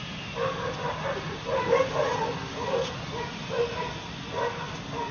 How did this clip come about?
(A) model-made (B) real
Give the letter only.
B